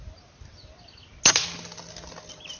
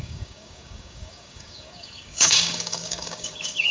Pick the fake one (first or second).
second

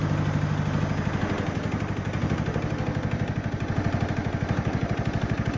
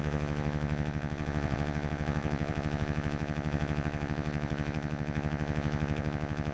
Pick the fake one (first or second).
second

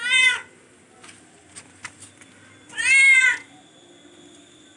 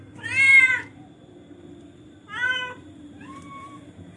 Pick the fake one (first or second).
second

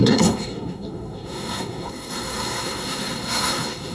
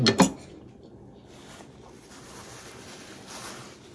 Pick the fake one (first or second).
first